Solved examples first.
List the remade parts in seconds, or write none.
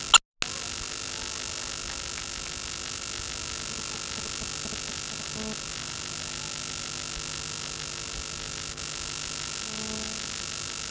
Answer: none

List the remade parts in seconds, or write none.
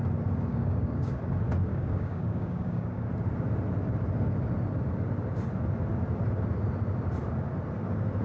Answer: 0.5-1.2 (codec, DAC); 1.7-3.1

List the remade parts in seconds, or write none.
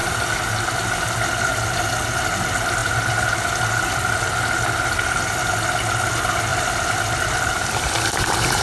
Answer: 6.5-7.5 (vocoder, BigVGAN v2)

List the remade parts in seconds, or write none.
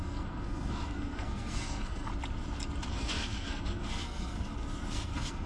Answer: 0.0-2.1 (codec, SNAC); 2.9-5.5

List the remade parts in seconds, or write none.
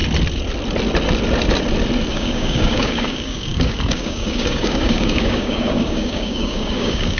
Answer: 2.1-7.2 (codec, DAC)